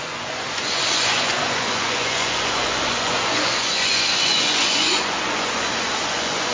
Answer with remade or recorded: remade